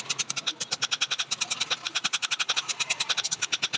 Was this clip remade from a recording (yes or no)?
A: no